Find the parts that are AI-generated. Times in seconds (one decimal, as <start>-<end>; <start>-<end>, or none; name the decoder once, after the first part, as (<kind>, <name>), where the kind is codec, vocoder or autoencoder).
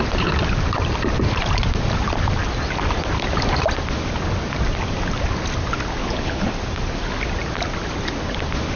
6.0-6.5 (codec, HILCodec)